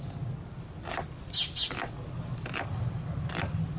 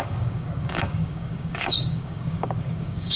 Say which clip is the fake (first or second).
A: second